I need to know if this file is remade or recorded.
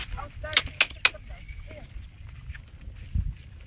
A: recorded